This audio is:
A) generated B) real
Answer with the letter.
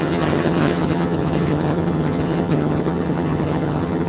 A